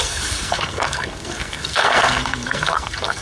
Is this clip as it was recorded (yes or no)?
no